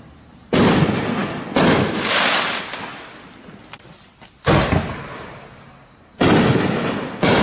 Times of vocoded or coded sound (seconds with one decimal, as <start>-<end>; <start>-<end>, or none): none